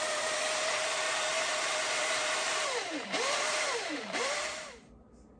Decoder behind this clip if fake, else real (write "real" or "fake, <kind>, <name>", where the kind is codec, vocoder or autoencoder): fake, vocoder, BigVGAN v2